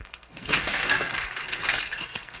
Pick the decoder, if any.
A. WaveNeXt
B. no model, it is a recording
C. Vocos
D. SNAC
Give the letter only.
D